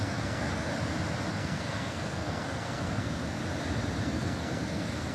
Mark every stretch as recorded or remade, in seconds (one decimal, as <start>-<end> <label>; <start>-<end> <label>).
0.0-0.7 remade; 0.7-1.3 recorded; 1.3-3.4 remade; 3.4-4.0 recorded; 4.0-5.1 remade